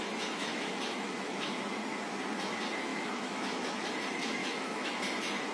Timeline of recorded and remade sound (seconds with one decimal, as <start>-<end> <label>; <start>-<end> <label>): 0.0-0.4 recorded; 0.4-1.6 remade; 1.6-2.9 recorded; 2.9-3.9 remade; 3.9-4.4 recorded; 4.4-4.9 remade; 4.9-5.5 recorded